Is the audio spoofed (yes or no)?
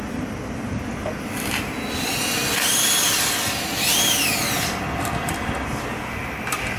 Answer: no